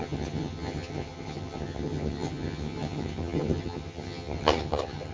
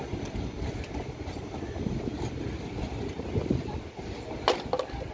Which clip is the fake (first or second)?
first